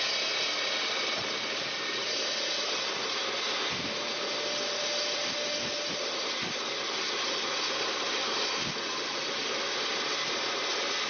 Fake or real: real